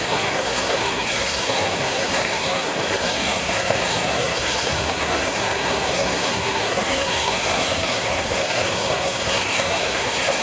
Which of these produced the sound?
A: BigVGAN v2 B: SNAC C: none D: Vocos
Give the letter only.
B